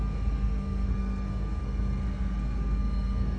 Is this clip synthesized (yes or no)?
yes